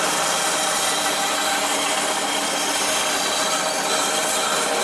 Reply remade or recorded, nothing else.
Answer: recorded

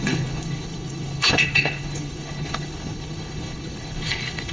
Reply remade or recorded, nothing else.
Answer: remade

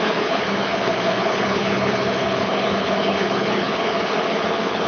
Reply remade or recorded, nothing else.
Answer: remade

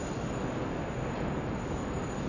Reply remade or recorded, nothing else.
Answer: recorded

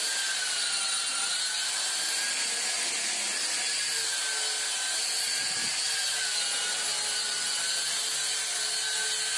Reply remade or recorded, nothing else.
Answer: recorded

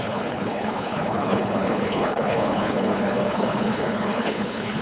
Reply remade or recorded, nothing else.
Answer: remade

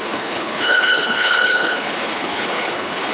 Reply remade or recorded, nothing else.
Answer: remade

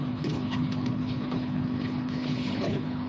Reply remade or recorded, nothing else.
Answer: remade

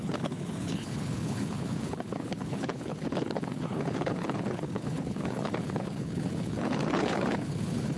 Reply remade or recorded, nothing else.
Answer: remade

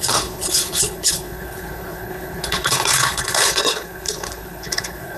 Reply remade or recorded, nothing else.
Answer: remade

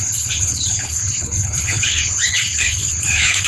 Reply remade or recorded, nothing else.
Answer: remade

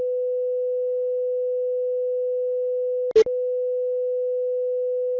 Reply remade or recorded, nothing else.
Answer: recorded